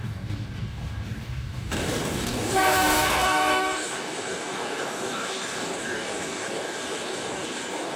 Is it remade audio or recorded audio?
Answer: remade